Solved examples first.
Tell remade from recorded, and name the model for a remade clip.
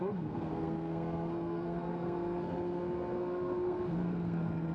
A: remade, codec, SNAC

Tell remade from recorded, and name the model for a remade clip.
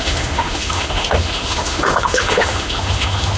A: remade, autoencoder, DAC-VAE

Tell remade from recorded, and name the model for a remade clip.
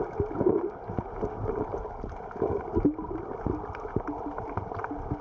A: recorded